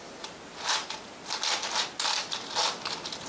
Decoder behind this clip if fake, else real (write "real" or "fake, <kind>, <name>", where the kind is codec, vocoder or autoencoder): fake, vocoder, BigVGAN v2